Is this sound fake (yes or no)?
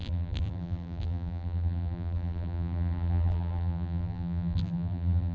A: yes